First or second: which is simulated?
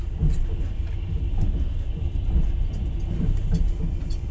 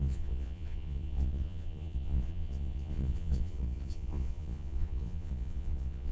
second